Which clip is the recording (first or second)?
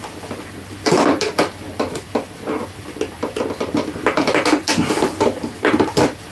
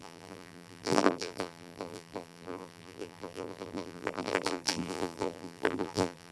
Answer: first